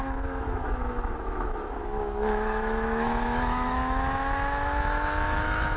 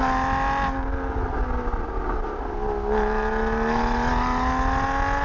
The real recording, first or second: second